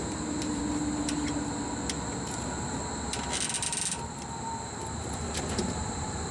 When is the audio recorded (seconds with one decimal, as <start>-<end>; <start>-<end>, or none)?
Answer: 0.6-4.4